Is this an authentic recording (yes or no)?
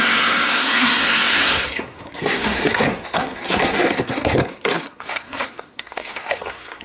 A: no